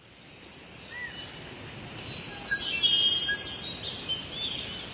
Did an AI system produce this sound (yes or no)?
no